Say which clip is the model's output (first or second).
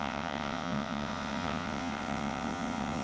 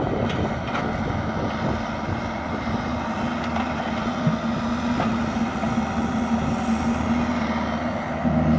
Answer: first